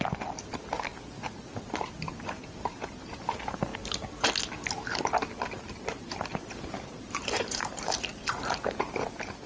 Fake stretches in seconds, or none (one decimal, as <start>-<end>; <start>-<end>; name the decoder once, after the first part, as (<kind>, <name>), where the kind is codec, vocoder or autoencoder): 0.0-3.7 (vocoder, BigVGAN v2); 5.3-6.3; 7.0-9.5